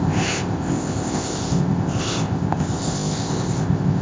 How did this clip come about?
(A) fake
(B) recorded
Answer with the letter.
A